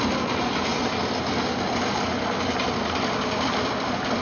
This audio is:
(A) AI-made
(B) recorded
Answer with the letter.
A